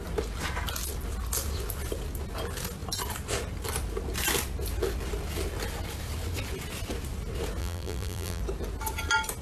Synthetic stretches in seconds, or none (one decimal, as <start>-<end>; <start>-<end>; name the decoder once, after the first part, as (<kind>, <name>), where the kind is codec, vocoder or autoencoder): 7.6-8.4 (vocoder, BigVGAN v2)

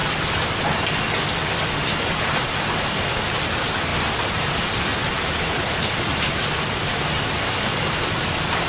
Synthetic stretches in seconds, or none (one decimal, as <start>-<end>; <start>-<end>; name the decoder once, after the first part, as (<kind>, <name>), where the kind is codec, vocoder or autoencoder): none

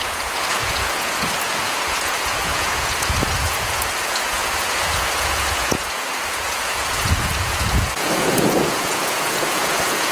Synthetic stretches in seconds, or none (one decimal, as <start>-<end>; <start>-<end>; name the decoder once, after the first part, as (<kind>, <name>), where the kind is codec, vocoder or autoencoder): 0.0-10.1 (vocoder, Vocos)

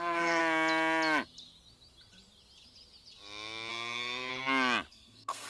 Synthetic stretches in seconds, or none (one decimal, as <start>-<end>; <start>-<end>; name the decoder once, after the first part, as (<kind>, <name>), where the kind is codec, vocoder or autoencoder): 0.0-0.4 (codec, SNAC); 3.7-4.3; 4.9-5.5

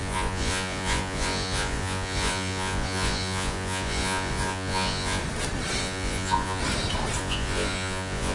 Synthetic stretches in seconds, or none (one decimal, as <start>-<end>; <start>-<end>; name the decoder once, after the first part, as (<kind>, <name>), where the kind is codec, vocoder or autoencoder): 0.0-5.2 (vocoder, Vocos); 5.8-6.6; 7.2-8.3

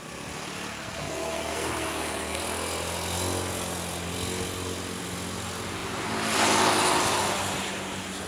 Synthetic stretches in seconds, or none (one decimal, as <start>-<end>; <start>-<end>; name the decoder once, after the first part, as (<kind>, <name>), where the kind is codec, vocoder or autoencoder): 0.7-2.4 (codec, SNAC)

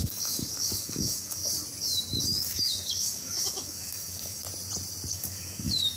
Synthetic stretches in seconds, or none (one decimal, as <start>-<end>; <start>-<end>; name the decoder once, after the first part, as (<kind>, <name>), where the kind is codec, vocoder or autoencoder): 0.0-1.4 (codec, DAC); 2.2-4.4; 5.1-6.0

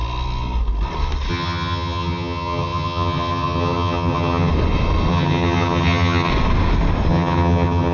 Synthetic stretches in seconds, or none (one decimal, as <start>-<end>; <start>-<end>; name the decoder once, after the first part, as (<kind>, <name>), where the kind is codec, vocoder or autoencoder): 1.3-4.5 (vocoder, HiFi-GAN); 5.1-6.3; 7.1-7.9